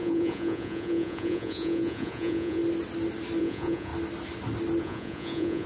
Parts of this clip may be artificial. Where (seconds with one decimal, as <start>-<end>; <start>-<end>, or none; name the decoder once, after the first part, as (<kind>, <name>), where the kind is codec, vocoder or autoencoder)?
0.0-2.6 (vocoder, Vocos); 3.4-3.9; 4.8-5.7